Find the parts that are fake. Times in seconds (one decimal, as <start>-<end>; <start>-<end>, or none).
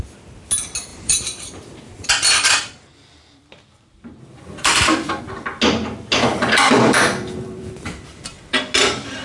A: 0.9-5.2; 6.3-8.6